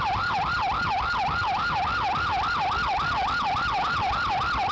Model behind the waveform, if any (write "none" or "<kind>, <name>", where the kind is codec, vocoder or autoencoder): none